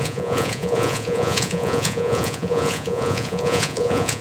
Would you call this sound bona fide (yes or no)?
no